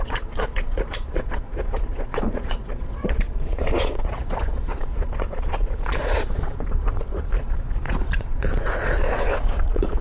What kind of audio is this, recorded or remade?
remade